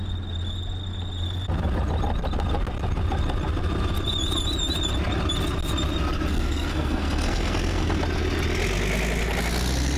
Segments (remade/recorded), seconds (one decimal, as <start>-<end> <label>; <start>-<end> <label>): 0.0-6.3 recorded; 6.3-8.0 remade; 8.0-10.0 recorded